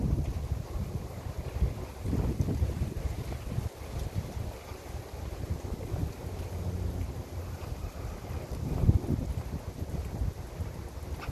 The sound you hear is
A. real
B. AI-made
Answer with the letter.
A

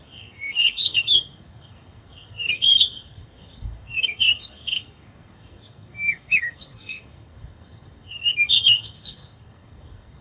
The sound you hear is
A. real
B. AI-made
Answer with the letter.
B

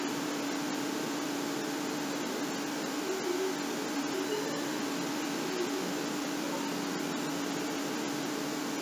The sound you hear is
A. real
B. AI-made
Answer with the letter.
A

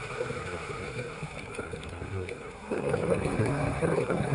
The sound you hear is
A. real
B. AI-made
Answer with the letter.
B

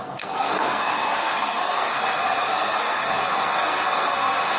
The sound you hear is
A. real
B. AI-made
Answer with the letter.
B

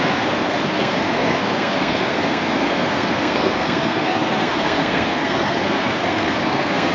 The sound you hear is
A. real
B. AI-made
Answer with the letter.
B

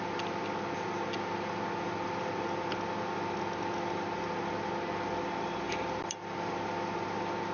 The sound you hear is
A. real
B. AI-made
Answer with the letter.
A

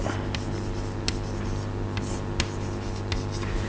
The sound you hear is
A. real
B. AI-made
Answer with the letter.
A